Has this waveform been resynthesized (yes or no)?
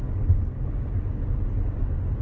no